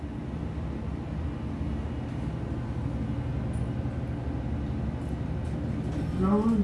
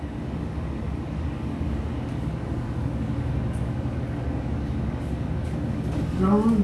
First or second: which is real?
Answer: first